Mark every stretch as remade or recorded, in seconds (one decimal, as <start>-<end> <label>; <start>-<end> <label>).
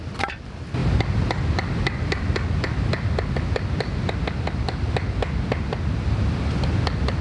0.0-7.2 recorded